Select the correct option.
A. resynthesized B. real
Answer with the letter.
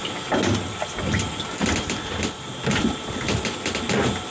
B